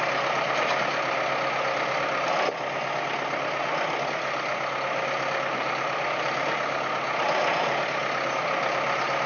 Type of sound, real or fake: real